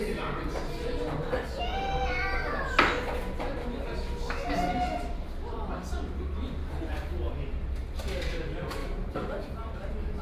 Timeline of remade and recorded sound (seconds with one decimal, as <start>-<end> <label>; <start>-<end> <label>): 0.0-10.2 recorded